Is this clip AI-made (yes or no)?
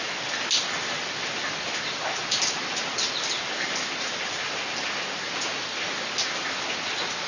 no